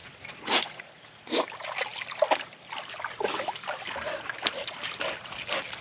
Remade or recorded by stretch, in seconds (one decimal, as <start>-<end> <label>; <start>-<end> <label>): 0.0-0.8 remade; 0.8-5.8 recorded